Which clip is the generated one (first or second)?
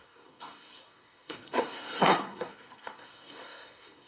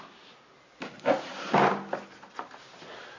first